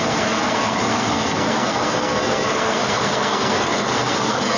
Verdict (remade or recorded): remade